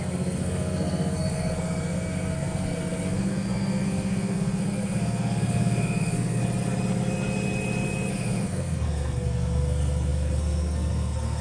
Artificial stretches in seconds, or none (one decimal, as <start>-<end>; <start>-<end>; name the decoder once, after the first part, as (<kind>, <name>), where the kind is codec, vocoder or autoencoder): 0.0-6.4 (codec, SNAC); 8.1-11.4